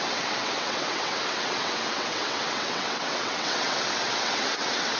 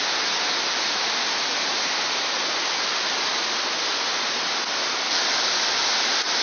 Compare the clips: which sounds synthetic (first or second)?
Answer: first